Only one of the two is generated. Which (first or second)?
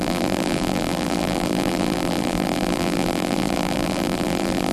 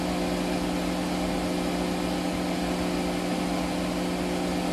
first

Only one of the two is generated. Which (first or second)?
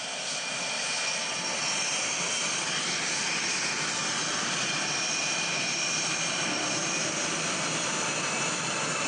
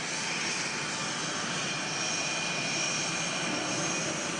first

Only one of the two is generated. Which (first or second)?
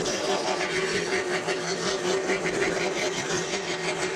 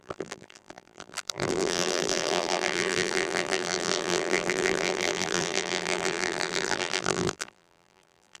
second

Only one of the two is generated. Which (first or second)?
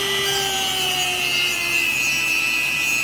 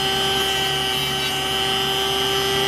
first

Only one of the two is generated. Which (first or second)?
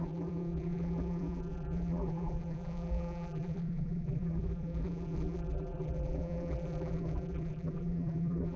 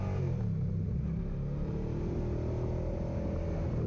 first